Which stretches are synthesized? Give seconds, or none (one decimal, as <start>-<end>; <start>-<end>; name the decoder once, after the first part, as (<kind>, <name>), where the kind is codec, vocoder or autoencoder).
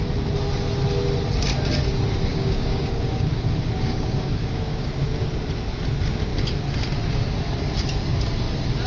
2.3-5.1 (codec, DAC)